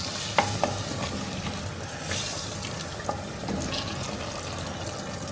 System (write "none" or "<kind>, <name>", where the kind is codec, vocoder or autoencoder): none